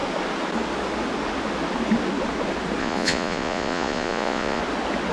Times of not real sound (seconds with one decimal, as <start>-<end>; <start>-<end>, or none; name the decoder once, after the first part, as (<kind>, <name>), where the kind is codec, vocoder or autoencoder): 2.8-4.6 (vocoder, Vocos)